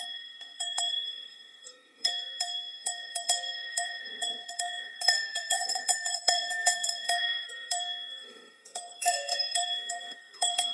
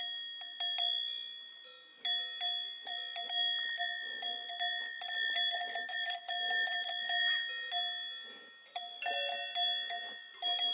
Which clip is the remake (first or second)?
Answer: first